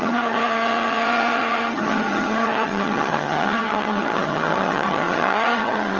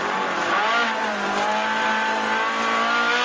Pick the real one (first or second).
second